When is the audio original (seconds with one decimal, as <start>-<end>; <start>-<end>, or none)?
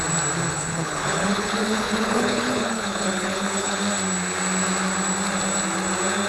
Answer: 0.0-0.5; 3.8-6.3